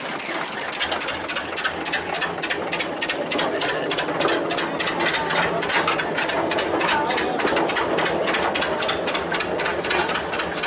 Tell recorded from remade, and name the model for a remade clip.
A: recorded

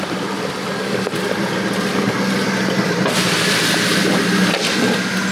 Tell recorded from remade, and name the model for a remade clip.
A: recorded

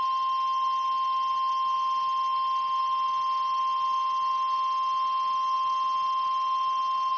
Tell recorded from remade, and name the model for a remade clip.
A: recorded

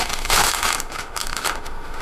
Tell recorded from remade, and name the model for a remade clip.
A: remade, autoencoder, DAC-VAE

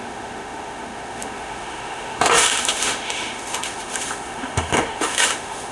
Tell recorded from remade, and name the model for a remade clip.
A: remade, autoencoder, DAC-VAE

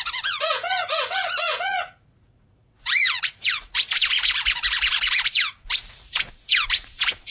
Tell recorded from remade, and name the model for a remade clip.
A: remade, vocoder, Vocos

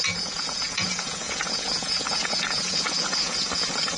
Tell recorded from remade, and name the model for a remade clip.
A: remade, vocoder, Vocos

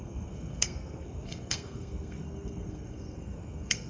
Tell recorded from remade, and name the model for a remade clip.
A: remade, codec, SNAC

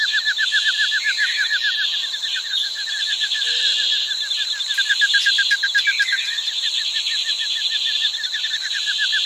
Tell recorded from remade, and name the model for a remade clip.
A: recorded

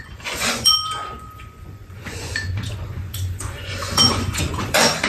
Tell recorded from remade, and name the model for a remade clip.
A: remade, vocoder, Vocos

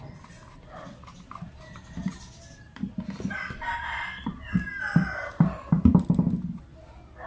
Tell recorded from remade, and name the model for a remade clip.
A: recorded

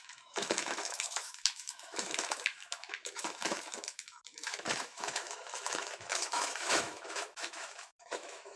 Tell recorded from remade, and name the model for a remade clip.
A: remade, autoencoder, DAC-VAE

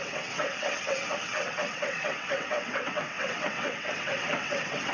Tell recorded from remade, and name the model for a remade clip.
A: remade, vocoder, WaveNeXt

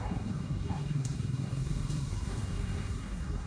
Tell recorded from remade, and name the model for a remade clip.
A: remade, codec, SNAC